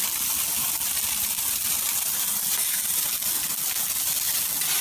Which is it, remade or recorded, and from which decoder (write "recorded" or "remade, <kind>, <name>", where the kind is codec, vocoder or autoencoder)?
recorded